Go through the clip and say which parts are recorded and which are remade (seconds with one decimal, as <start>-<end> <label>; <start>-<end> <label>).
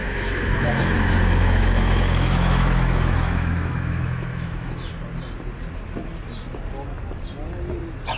0.0-4.9 remade; 4.9-8.2 recorded